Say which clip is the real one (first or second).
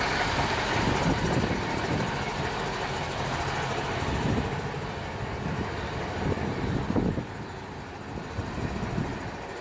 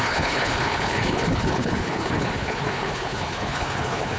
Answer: first